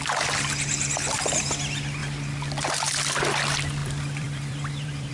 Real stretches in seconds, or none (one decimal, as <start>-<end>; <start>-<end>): 0.0-3.8